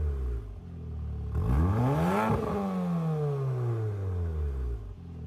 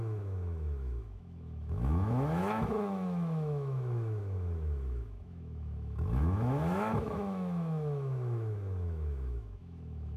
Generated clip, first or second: second